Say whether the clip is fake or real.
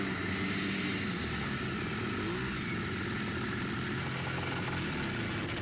real